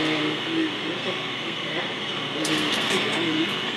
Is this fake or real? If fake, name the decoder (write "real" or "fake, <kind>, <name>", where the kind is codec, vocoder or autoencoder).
fake, codec, SNAC